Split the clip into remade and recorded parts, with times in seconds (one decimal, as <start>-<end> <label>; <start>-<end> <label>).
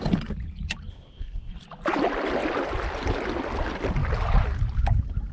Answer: 0.0-0.9 recorded; 0.9-1.5 remade; 1.5-5.3 recorded